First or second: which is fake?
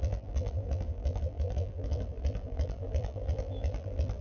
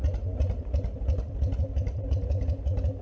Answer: first